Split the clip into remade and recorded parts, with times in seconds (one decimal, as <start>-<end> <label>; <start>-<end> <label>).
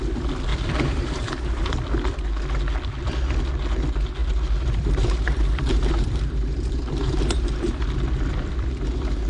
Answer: 0.0-0.5 recorded; 0.5-1.8 remade; 1.8-4.2 recorded; 4.2-7.8 remade; 7.8-9.3 recorded